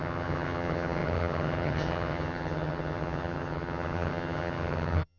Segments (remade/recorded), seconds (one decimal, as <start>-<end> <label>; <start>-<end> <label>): 0.0-5.2 remade